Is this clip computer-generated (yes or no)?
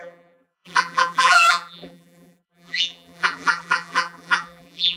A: yes